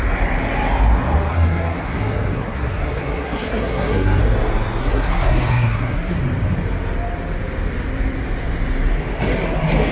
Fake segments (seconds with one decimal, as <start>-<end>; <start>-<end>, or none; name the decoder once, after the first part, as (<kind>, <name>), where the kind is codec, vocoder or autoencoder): 1.3-4.2 (codec, SNAC); 4.8-6.2